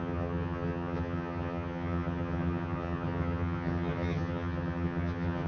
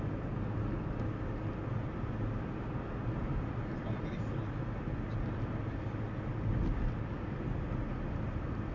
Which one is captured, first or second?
second